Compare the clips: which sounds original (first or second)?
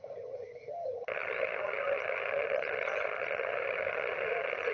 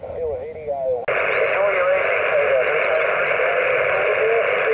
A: second